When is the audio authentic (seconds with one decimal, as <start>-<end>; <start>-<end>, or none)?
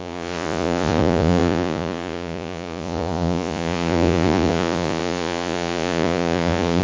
none